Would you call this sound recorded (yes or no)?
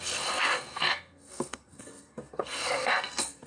no